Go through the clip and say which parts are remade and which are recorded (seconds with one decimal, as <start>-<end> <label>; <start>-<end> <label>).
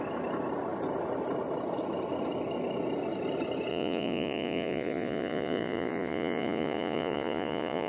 0.0-3.7 recorded; 3.7-7.9 remade